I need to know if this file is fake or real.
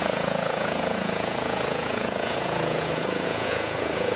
fake